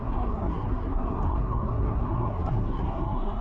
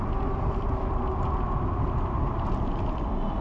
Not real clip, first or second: first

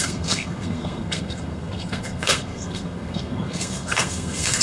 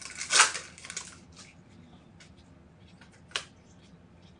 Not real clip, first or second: first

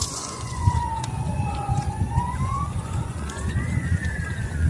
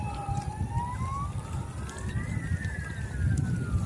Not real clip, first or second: first